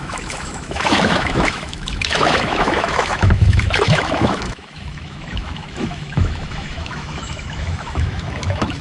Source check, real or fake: fake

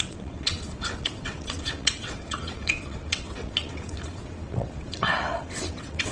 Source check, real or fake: fake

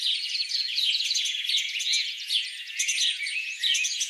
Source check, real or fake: fake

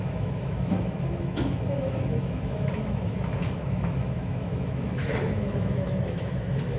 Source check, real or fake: fake